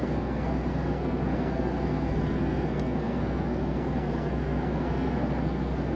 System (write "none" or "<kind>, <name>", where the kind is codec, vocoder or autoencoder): codec, SNAC